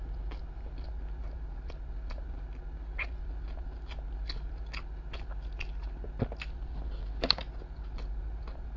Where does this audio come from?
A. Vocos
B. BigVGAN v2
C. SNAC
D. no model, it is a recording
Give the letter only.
D